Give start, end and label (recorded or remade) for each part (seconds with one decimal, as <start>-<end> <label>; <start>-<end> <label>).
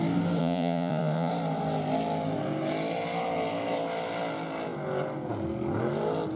0.0-0.4 recorded; 0.4-1.3 remade; 1.3-6.4 recorded